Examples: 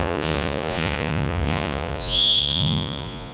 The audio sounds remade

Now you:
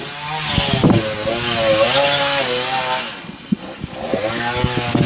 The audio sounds recorded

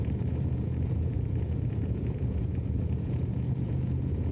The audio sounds remade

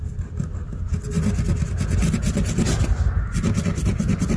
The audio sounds recorded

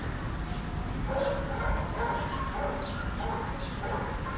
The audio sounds recorded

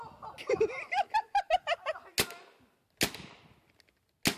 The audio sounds recorded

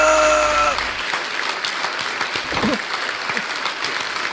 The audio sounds recorded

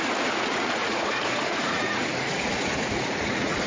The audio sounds remade